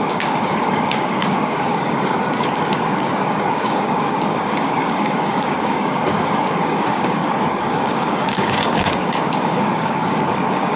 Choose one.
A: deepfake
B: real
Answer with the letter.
A